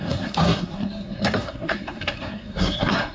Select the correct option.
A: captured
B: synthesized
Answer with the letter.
B